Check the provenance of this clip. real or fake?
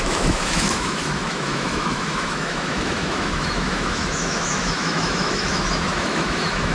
fake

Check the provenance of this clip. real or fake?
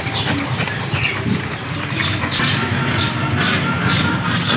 real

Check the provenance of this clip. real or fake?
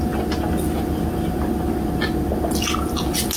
real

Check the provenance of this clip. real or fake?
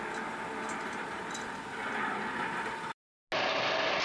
real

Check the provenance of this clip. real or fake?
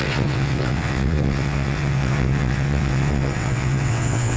fake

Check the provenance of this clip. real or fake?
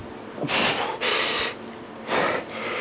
real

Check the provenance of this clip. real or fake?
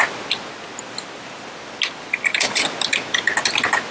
real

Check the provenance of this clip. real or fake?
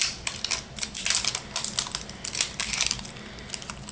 real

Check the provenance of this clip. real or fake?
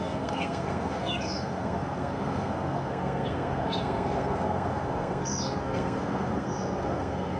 fake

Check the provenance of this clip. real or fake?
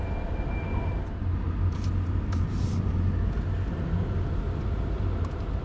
real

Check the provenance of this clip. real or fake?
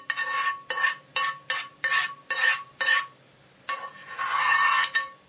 real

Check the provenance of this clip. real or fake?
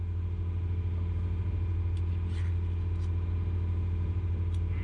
real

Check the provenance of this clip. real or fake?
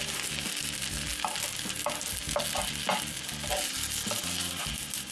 real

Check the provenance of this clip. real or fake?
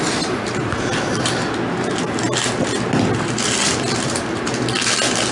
real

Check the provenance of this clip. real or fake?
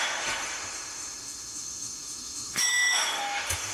fake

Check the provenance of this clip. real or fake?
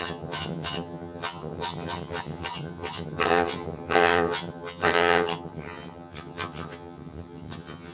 fake